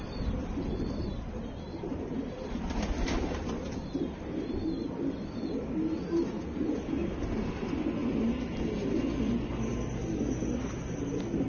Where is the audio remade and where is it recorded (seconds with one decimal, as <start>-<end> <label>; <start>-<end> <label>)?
0.0-11.5 recorded